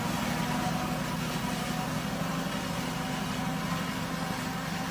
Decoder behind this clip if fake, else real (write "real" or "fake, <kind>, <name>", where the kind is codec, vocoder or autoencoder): real